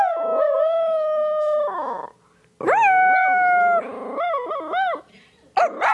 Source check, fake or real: real